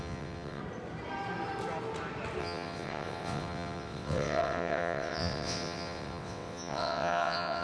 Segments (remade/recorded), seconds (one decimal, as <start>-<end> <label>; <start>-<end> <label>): 0.0-0.6 remade; 0.6-2.4 recorded; 2.4-7.6 remade